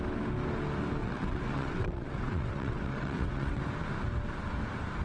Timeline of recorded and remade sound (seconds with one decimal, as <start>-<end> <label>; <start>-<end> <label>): 0.0-1.0 recorded; 1.0-3.6 remade; 3.6-5.0 recorded